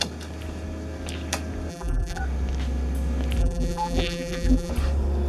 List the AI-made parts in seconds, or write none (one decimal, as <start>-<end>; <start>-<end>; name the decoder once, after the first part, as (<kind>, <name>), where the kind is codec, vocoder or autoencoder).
1.7-2.2 (vocoder, BigVGAN v2); 3.4-4.7